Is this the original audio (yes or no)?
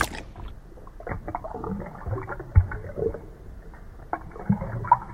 yes